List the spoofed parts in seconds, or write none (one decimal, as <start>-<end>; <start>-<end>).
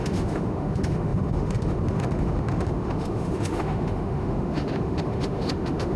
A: 0.0-6.0